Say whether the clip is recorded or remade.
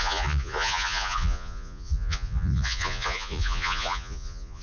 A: remade